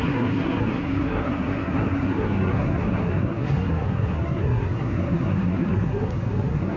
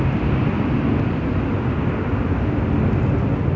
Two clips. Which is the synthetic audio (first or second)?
first